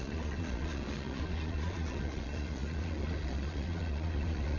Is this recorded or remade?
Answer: remade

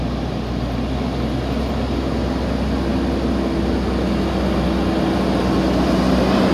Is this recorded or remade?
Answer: recorded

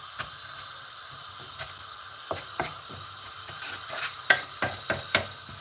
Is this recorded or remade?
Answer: remade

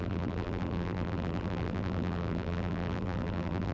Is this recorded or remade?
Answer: remade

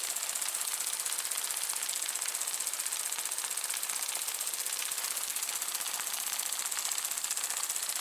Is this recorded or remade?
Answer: recorded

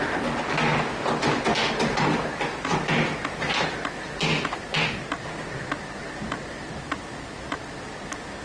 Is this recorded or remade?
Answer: recorded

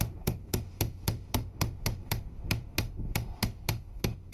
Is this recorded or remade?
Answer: remade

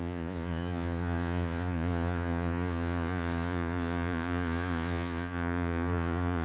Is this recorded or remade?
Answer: remade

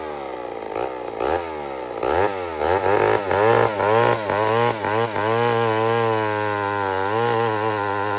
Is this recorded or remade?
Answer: recorded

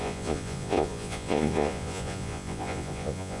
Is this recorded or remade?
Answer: remade